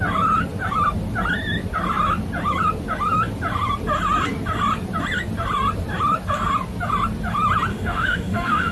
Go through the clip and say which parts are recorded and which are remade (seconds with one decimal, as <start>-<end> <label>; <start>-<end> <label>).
0.0-7.7 recorded; 7.7-8.7 remade